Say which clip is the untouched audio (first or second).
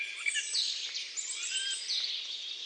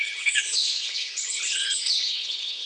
first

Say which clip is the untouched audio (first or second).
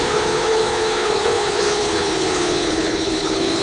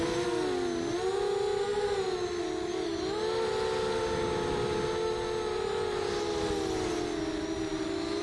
second